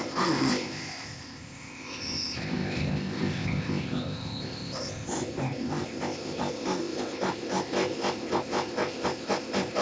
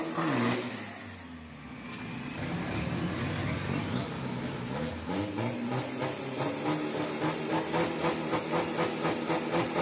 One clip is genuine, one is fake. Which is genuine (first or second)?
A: second